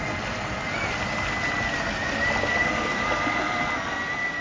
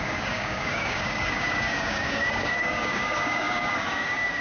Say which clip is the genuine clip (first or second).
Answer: first